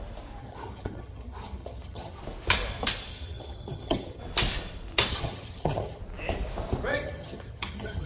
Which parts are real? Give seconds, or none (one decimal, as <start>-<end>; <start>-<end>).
0.0-0.4; 2.2-3.1; 4.2-5.1; 6.0-6.9